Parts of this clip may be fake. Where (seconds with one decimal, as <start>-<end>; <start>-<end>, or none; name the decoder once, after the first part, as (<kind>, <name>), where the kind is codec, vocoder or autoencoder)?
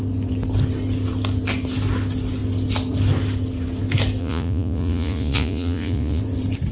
4.2-6.2 (vocoder, Vocos)